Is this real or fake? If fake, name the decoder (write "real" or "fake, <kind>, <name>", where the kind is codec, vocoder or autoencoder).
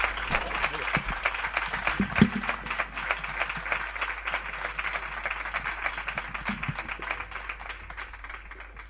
real